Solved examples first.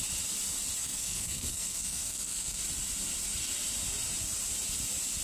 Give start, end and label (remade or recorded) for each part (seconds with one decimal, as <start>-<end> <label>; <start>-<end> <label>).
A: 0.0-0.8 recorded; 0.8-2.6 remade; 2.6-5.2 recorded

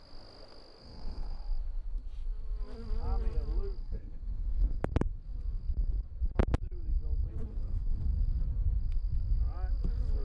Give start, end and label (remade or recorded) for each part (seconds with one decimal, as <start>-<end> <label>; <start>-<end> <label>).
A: 0.0-0.8 recorded; 0.8-1.4 remade; 1.4-3.8 recorded; 3.8-4.8 remade; 4.8-7.5 recorded; 7.5-8.0 remade; 8.0-10.2 recorded

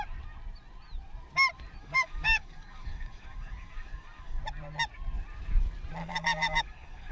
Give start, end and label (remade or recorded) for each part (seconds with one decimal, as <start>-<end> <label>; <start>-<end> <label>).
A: 0.0-1.8 recorded; 1.8-4.4 remade; 4.4-6.0 recorded; 6.0-7.1 remade